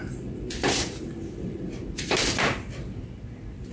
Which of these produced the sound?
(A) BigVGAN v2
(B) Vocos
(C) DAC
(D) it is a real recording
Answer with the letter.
A